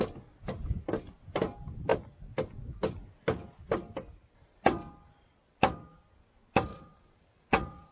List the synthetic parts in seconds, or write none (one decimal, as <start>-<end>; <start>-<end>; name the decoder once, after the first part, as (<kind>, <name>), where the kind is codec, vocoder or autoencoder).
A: 6.7-7.9 (vocoder, WaveNeXt)